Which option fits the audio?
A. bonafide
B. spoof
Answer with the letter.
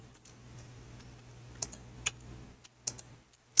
A